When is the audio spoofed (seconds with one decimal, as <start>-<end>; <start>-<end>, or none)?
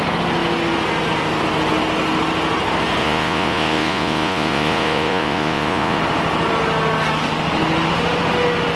3.0-6.0